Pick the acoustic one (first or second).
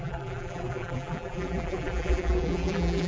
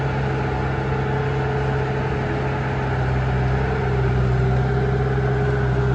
second